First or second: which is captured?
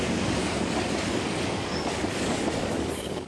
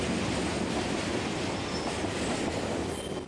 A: second